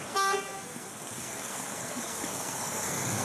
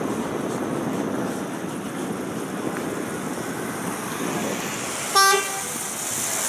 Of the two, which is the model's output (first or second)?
first